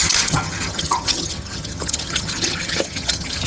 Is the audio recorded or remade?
remade